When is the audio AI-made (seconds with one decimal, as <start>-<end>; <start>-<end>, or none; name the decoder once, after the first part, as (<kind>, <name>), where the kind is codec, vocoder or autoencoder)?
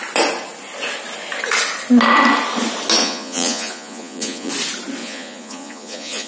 3.0-4.5 (vocoder, Vocos); 5.0-6.3